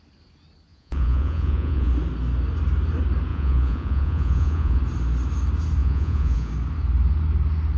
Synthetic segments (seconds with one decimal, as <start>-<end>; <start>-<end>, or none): 0.7-1.9; 3.3-4.8; 5.8-6.5